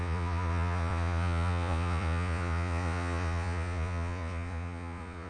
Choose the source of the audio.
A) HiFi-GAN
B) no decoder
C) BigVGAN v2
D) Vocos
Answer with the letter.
D